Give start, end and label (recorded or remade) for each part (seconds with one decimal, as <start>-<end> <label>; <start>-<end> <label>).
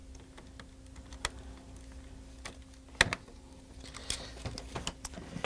0.0-5.5 recorded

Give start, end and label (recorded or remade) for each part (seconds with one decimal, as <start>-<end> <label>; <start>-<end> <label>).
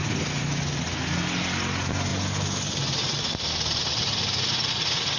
0.0-5.2 recorded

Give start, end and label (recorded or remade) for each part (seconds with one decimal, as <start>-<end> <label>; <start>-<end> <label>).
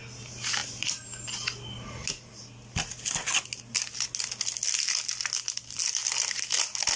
0.0-7.0 recorded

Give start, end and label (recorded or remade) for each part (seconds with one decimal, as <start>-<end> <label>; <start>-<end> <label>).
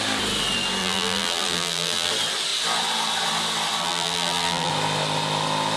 0.0-0.8 recorded; 0.8-2.1 remade; 2.1-3.8 recorded; 3.8-4.7 remade; 4.7-5.8 recorded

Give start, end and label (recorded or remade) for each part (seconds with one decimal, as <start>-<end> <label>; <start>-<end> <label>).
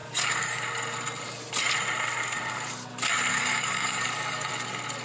0.0-0.6 remade; 0.6-3.3 recorded; 3.3-4.5 remade; 4.5-5.0 recorded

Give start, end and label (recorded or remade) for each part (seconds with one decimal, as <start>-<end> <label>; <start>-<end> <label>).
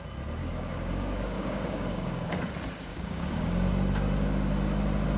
0.0-0.4 recorded; 0.4-2.4 remade; 2.4-2.9 recorded; 2.9-3.7 remade; 3.7-5.2 recorded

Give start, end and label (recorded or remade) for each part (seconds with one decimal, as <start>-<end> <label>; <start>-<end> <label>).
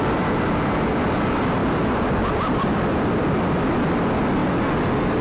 0.0-5.2 recorded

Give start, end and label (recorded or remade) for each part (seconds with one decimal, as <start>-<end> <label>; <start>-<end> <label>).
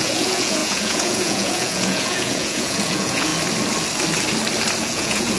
0.0-3.3 remade; 3.3-4.8 recorded; 4.8-5.4 remade